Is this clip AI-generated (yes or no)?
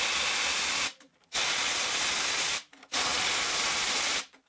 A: no